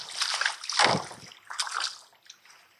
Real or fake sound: real